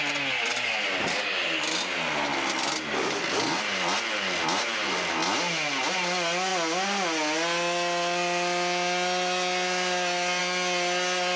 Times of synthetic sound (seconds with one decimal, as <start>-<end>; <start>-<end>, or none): none

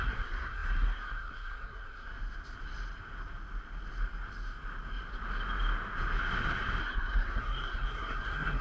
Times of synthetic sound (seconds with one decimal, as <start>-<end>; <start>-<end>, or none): 0.0-2.1; 6.8-8.6

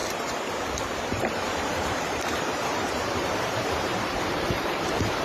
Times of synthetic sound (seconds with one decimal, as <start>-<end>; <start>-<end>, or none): 0.0-5.2

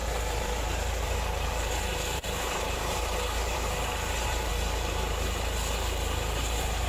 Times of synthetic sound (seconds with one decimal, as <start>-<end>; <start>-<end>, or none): 0.0-4.5; 6.4-6.9

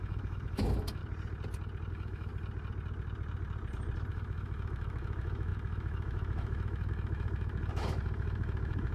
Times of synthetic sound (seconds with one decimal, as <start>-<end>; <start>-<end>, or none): 0.0-1.0; 1.9-2.3; 4.1-8.9

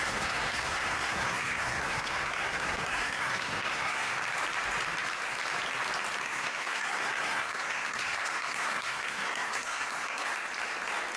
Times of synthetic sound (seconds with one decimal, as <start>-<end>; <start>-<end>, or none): 0.0-4.1; 6.2-10.3

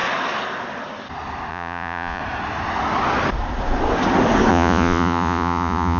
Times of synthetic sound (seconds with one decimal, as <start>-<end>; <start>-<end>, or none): 1.5-2.2; 4.5-6.0